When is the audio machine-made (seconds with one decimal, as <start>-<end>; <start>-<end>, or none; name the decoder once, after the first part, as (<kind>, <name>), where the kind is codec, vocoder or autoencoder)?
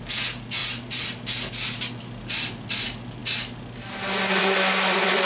none